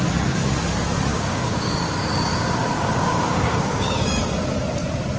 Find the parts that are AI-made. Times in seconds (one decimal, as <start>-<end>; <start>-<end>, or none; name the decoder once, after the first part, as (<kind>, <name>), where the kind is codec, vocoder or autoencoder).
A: 1.1-4.2 (codec, DAC)